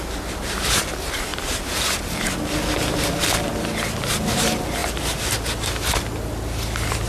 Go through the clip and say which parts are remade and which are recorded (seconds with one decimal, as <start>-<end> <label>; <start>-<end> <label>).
0.0-1.3 recorded; 1.3-2.0 remade; 2.0-4.8 recorded; 4.8-5.7 remade; 5.7-7.1 recorded